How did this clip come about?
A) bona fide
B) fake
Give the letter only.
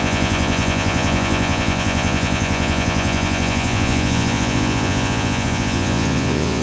B